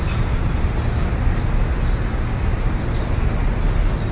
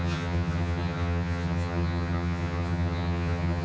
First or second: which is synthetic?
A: second